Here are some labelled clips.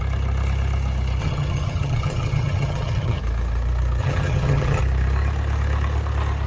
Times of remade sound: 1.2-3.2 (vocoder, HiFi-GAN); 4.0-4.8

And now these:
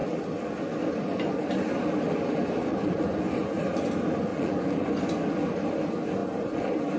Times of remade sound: 2.7-3.6 (vocoder, Vocos); 4.3-5.0

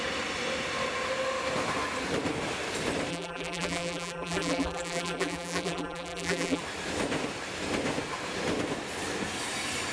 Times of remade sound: 3.1-6.6 (vocoder, BigVGAN v2)